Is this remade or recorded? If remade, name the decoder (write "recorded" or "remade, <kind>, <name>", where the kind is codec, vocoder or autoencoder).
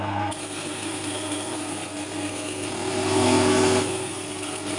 remade, codec, SNAC